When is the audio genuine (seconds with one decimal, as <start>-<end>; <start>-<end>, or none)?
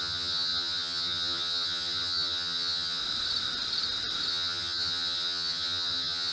3.0-4.3